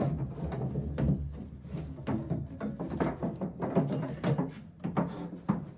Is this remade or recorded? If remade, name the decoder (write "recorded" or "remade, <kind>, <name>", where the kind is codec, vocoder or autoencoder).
recorded